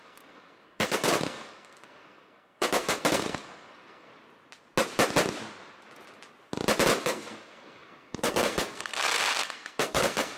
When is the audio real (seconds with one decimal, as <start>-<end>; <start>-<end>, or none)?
4.1-7.0